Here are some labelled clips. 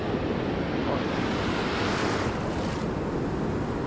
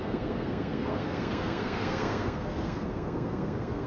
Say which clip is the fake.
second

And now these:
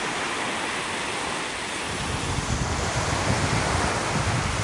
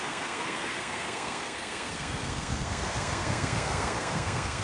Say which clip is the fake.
second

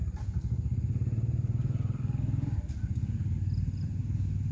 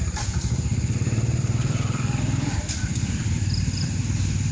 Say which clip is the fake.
second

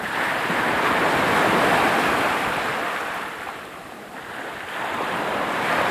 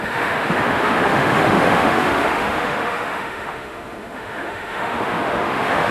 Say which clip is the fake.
second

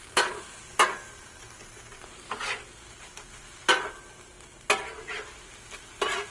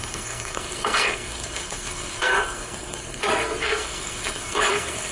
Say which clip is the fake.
second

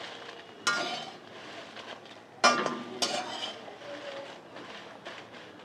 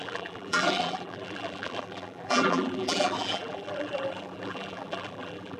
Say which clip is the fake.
second